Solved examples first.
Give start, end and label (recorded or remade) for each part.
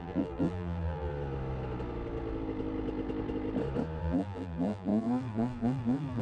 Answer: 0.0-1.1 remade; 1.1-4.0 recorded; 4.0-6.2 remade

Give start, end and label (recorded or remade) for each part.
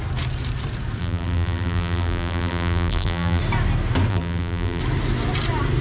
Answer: 0.0-1.0 recorded; 1.0-3.4 remade; 3.4-4.1 recorded; 4.1-4.8 remade; 4.8-5.8 recorded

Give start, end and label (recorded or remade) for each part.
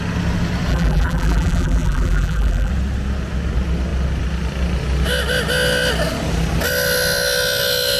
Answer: 0.0-0.7 recorded; 0.7-2.7 remade; 2.7-8.0 recorded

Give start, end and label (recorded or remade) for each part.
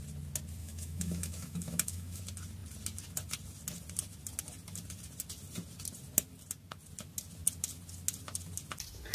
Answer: 0.0-0.6 recorded; 0.6-2.2 remade; 2.2-9.1 recorded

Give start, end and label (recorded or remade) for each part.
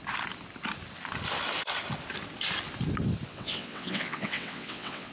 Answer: 0.0-3.3 recorded; 3.3-5.1 remade